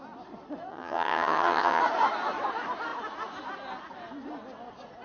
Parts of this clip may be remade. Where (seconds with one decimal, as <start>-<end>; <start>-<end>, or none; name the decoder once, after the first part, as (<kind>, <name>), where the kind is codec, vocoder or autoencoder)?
0.7-1.8 (vocoder, HiFi-GAN)